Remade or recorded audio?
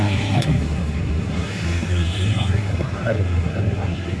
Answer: remade